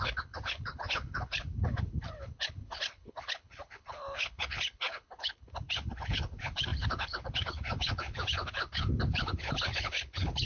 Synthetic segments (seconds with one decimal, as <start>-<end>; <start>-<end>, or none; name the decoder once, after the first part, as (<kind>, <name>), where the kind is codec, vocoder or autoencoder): 0.0-10.5 (codec, HILCodec)